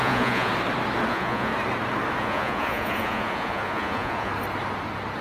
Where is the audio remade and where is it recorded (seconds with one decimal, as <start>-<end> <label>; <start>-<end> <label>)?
0.0-0.5 remade; 0.5-1.1 recorded; 1.1-1.5 remade; 1.5-2.2 recorded; 2.2-4.3 remade; 4.3-5.2 recorded